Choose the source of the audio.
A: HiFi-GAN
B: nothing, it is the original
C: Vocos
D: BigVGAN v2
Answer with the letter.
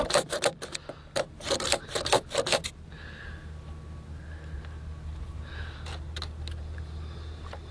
B